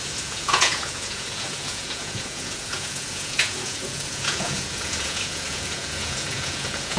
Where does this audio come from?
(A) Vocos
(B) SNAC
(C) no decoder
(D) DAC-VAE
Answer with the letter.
A